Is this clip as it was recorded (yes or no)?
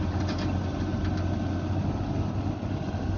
yes